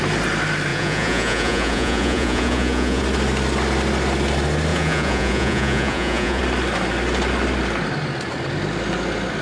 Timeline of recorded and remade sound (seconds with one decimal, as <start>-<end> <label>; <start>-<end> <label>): 0.0-0.7 recorded; 0.7-3.0 remade; 3.0-4.7 recorded; 4.7-6.4 remade; 6.4-9.4 recorded